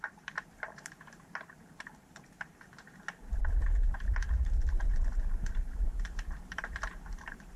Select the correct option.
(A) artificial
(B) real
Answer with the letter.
A